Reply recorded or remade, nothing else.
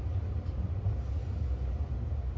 recorded